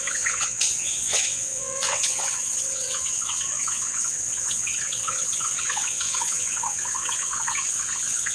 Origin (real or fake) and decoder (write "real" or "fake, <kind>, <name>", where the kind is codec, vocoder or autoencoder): fake, vocoder, WaveNeXt